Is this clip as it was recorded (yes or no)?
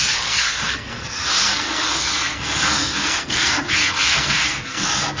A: no